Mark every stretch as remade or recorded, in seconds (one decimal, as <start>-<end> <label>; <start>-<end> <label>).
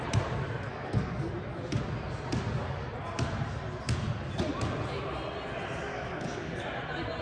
0.0-0.7 recorded; 0.7-1.3 remade; 1.3-5.9 recorded; 5.9-6.6 remade; 6.6-7.2 recorded